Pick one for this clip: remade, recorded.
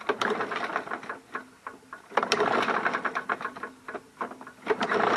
recorded